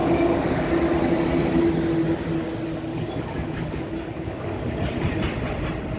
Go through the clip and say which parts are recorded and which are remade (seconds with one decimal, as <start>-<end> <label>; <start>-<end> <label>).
0.0-0.7 remade; 0.7-2.9 recorded; 2.9-4.7 remade; 4.7-6.0 recorded

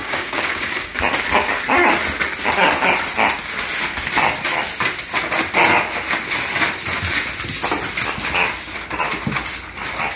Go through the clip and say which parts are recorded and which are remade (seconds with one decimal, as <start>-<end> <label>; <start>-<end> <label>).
0.0-1.0 remade; 1.0-10.2 recorded

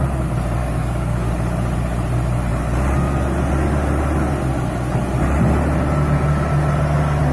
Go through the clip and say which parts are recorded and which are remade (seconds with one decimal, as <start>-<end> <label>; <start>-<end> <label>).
0.0-0.6 recorded; 0.6-1.3 remade; 1.3-7.3 recorded

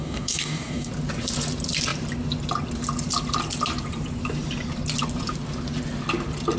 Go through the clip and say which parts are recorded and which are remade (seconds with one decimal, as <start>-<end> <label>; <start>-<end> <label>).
0.0-0.9 remade; 0.9-6.6 recorded